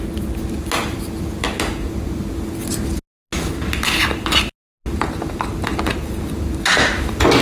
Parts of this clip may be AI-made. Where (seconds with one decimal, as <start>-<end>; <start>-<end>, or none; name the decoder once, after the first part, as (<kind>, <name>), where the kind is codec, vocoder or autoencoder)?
none